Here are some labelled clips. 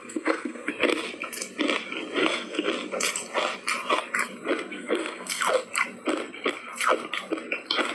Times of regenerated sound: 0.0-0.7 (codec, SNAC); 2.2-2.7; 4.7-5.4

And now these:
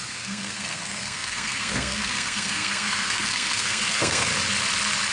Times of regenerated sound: 0.0-4.3 (codec, SNAC)

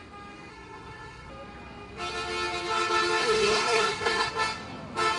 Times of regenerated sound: 0.5-1.3 (codec, SNAC); 3.2-4.3

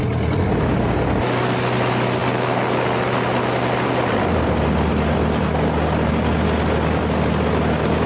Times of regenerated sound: none

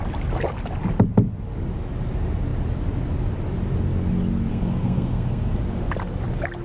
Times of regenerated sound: 4.5-5.6 (codec, SNAC)

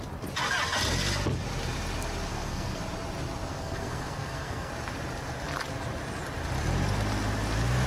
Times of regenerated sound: 2.3-2.8 (codec, SNAC); 3.5-4.7

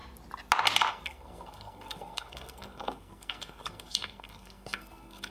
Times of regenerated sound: 0.9-5.3 (codec, SNAC)